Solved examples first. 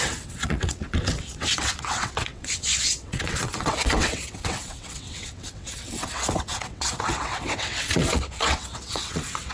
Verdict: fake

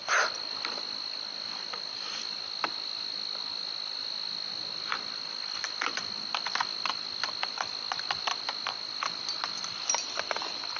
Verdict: real